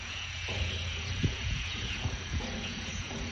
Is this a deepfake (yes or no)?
yes